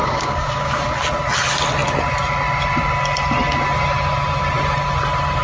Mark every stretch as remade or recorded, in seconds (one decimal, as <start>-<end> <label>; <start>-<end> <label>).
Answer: 0.0-0.8 remade; 0.8-5.4 recorded